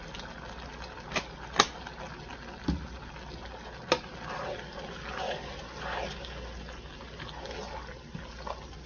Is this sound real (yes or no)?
yes